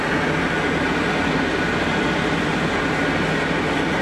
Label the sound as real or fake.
real